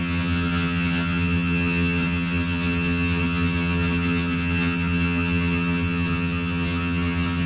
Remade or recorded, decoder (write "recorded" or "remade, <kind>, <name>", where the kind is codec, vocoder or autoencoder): remade, vocoder, HiFi-GAN